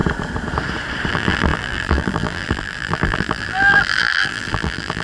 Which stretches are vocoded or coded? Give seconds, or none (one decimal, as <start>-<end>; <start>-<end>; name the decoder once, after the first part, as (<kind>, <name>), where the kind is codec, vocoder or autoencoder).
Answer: 1.1-5.0 (vocoder, BigVGAN v2)